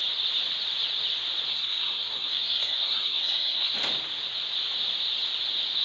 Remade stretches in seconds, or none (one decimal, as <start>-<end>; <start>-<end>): 1.5-3.7